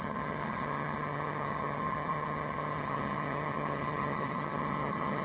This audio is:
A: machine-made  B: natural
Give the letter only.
A